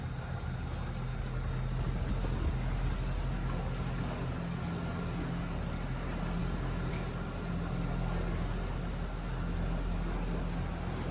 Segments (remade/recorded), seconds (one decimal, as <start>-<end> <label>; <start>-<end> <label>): 0.0-11.1 recorded